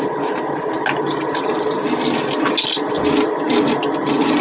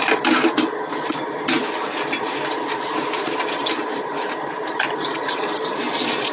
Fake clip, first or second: second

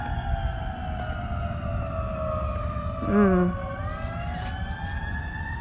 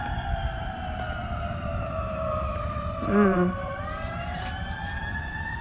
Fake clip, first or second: second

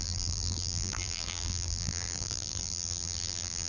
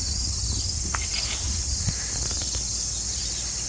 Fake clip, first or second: first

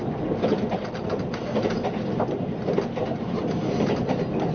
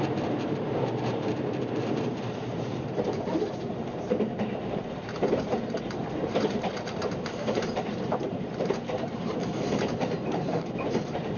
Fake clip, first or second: second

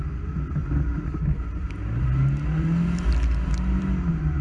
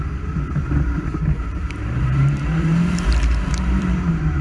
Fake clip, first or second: second